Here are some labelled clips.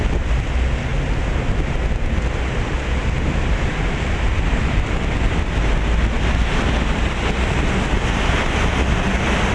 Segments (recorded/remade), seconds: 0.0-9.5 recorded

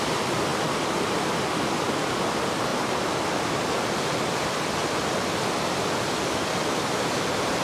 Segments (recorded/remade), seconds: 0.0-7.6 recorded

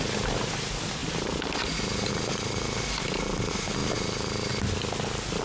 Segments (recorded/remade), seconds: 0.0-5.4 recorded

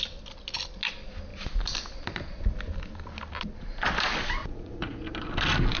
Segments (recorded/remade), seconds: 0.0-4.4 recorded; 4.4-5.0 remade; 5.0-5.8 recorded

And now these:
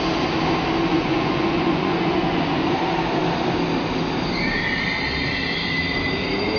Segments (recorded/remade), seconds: 0.0-0.9 recorded; 0.9-2.8 remade; 2.8-6.6 recorded

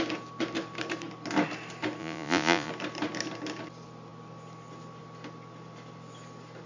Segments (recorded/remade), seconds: 0.0-2.0 recorded; 2.0-2.7 remade; 2.7-6.7 recorded